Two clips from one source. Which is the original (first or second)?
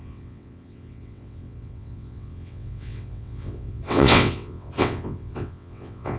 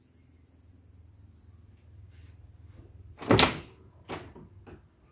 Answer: second